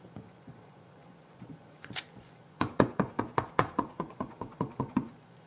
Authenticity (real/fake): fake